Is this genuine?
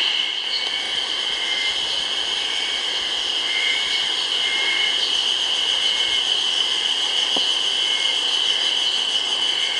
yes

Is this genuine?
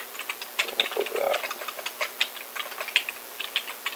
yes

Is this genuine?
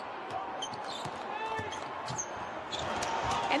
yes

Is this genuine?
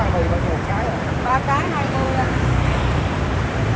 no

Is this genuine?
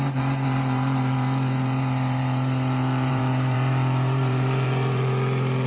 no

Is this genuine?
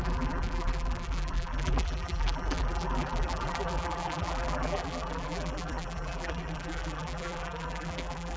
no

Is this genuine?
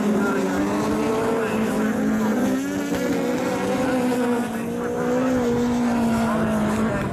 yes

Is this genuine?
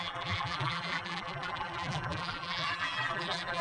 no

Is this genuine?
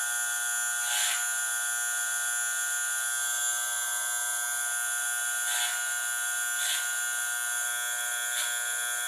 yes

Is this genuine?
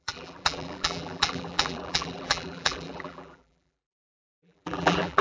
no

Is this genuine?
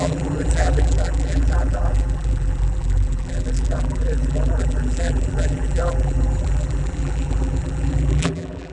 no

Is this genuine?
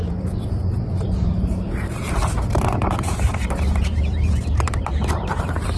no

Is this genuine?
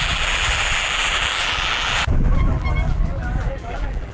no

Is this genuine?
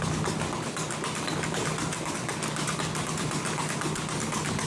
yes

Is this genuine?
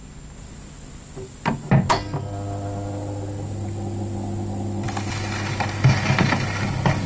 yes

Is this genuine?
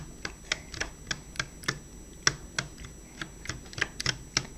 yes